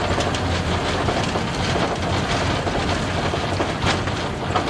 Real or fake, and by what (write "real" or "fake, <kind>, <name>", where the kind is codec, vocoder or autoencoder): real